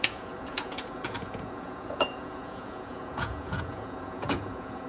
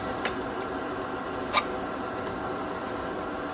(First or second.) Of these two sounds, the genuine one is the second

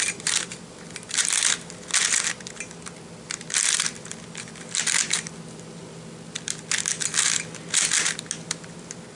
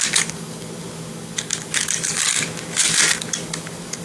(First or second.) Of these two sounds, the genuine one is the first